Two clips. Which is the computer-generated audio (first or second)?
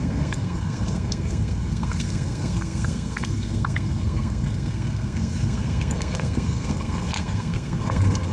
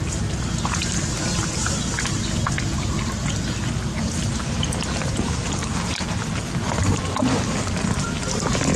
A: first